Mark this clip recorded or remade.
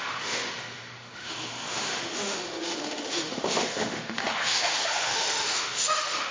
remade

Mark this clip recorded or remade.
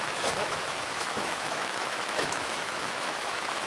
remade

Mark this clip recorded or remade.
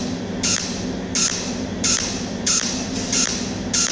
recorded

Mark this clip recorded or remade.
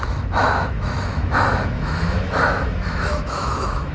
remade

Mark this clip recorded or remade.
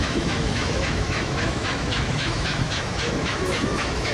remade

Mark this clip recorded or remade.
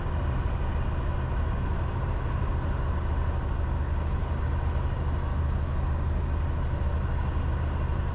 recorded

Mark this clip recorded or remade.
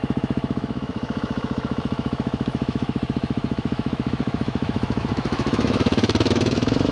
remade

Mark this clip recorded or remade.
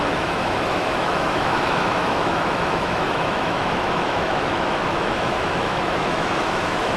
remade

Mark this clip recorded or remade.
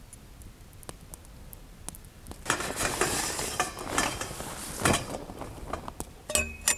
recorded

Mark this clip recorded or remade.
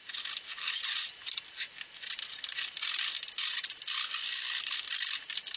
recorded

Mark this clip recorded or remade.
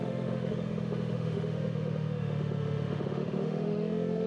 remade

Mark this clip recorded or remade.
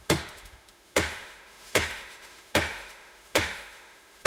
remade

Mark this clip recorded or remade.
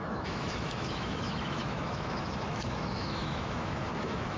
remade